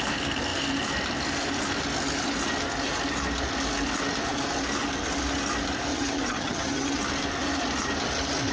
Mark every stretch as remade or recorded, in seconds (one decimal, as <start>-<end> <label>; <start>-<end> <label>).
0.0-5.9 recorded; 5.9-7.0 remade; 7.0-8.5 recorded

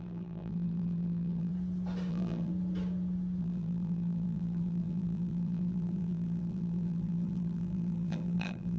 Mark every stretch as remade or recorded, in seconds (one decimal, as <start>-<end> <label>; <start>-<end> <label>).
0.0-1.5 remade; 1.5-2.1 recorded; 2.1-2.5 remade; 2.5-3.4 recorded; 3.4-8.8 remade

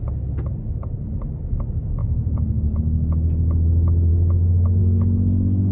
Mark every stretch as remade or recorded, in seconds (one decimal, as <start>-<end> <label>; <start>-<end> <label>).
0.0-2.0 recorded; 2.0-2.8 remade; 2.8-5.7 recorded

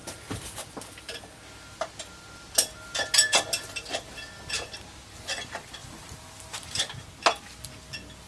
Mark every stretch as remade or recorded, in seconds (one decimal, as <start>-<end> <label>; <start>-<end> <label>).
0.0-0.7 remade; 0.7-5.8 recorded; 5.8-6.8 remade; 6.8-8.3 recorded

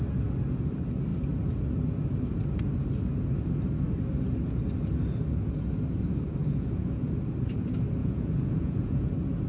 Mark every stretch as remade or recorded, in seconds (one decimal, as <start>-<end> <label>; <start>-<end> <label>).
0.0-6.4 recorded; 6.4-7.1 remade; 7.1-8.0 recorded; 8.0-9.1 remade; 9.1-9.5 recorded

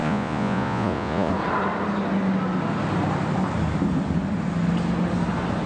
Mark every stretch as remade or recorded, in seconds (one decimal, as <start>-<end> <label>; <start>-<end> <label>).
0.0-1.3 remade; 1.3-5.7 recorded

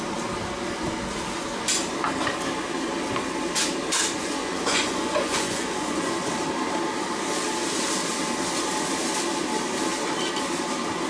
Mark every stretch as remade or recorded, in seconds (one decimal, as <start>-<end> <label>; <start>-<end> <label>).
0.0-4.2 recorded; 4.2-6.2 remade; 6.2-11.1 recorded